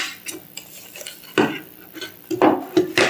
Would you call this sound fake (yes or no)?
no